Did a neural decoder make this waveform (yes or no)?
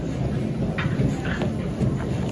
no